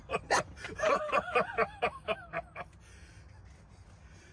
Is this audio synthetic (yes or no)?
no